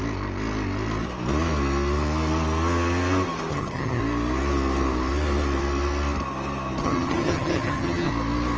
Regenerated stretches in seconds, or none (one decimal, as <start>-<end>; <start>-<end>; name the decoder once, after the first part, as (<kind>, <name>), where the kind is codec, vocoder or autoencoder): 3.5-4.0 (vocoder, HiFi-GAN); 6.8-8.1